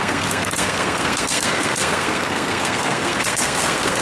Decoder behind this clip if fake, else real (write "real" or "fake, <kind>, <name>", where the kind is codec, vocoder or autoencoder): fake, codec, SNAC